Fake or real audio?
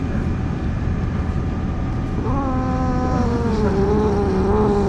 real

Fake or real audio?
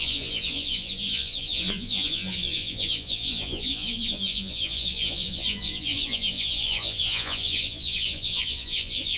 fake